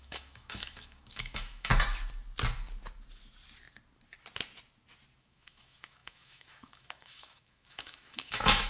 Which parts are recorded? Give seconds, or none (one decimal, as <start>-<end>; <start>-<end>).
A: 1.7-5.2